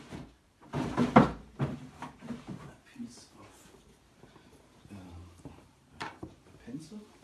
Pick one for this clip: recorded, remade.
remade